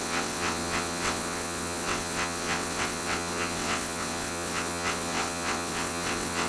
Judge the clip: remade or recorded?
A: remade